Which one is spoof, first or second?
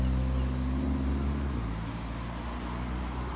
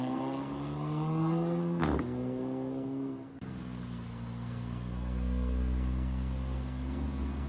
second